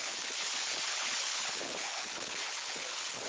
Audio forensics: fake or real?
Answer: fake